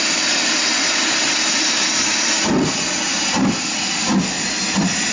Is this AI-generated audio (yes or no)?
no